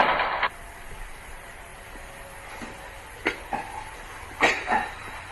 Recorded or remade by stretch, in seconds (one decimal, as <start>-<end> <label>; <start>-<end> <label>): 0.0-1.7 remade; 1.7-4.5 recorded; 4.5-5.3 remade